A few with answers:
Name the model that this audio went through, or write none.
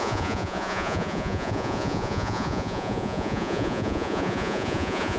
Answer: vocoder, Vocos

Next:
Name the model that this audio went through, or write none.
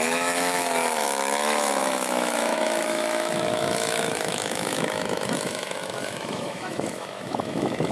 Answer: autoencoder, DAC-VAE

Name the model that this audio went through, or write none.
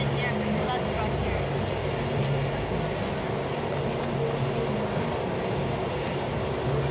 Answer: none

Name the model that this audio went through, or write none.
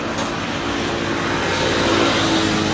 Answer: none